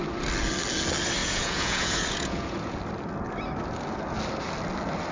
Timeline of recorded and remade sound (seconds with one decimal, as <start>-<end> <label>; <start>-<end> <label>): 0.0-1.2 recorded; 1.2-2.8 remade; 2.8-5.1 recorded